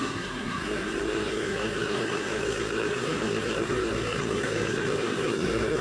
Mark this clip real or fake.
fake